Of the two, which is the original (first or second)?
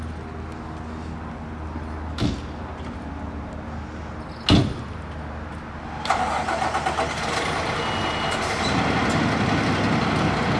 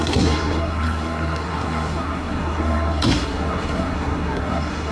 first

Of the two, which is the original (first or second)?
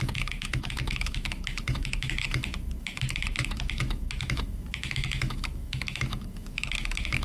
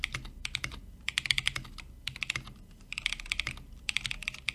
second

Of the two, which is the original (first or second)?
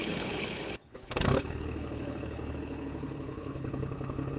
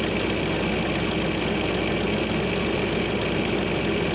second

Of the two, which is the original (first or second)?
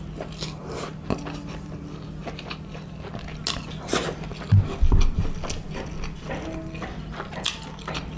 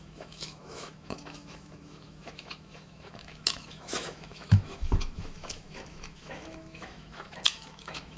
first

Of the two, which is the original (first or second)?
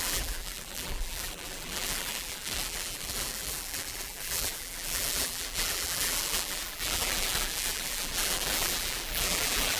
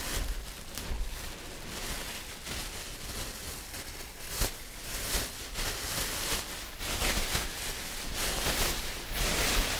second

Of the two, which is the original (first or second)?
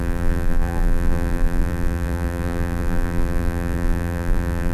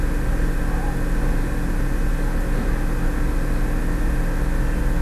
second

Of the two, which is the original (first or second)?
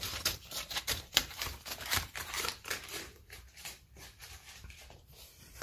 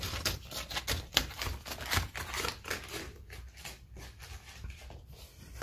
second